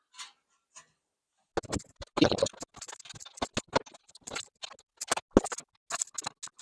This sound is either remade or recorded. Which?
recorded